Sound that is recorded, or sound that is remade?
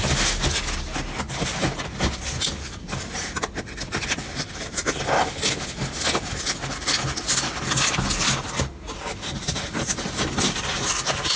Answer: recorded